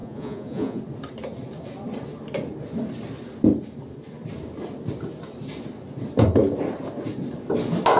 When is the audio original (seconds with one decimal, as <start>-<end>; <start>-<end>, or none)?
0.8-8.0